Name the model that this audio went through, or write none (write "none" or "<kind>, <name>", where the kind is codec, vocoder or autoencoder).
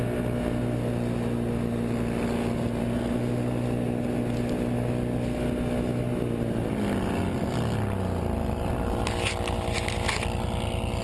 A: none